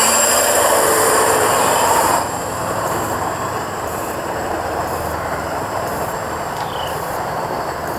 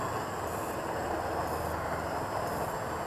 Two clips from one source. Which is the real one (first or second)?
second